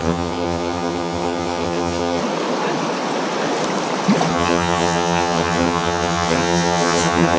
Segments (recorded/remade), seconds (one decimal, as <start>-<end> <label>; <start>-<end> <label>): 0.0-2.2 remade; 2.2-4.3 recorded; 4.3-7.4 remade